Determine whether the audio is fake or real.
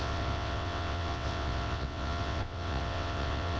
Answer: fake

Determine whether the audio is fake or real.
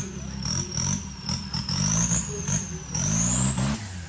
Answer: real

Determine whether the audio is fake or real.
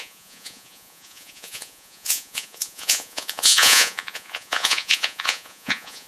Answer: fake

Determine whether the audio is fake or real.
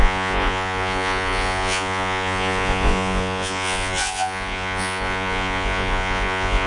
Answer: fake